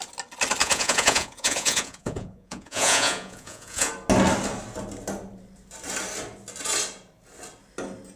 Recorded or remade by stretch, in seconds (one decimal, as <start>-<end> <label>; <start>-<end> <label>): 0.0-0.6 recorded; 0.6-3.9 remade; 3.9-8.2 recorded